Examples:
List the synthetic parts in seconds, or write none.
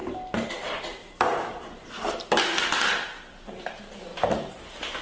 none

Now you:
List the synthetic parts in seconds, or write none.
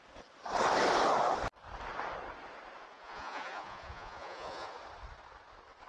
2.9-4.8 (vocoder, Vocos)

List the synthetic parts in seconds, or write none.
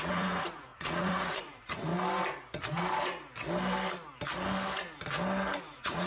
0.0-1.9 (vocoder, Vocos); 5.6-6.1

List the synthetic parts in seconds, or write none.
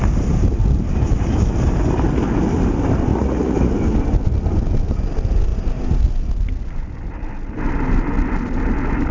3.1-3.7 (vocoder, Vocos)